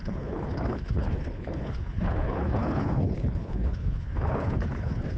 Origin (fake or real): fake